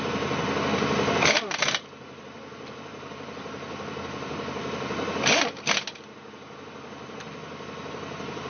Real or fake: real